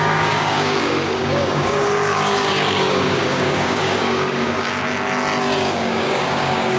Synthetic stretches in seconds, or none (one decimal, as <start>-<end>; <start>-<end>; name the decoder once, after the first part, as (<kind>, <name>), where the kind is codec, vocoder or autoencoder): 0.0-4.8 (codec, DAC); 5.4-6.8